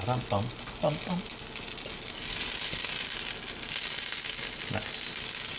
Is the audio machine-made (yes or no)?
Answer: no